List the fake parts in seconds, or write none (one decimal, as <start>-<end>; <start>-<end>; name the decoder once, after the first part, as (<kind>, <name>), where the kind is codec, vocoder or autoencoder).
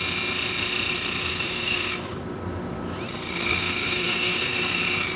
1.3-1.9 (codec, SNAC); 3.5-4.8